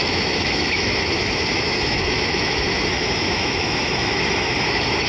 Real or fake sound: fake